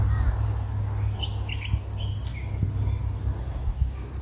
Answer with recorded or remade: recorded